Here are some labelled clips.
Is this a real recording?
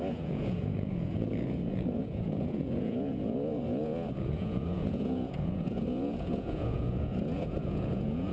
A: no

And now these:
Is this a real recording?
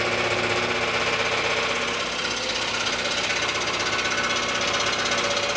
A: yes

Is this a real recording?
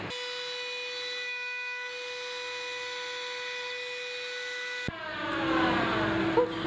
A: yes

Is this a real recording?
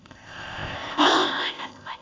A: no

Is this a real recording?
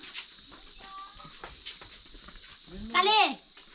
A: yes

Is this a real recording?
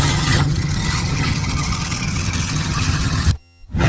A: no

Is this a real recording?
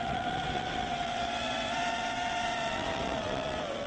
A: no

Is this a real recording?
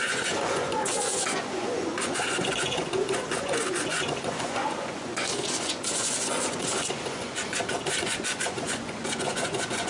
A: no